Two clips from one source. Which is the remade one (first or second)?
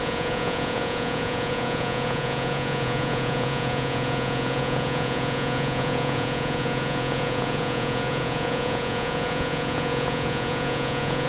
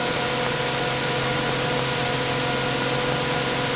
first